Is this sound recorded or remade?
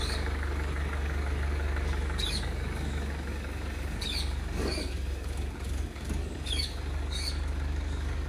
remade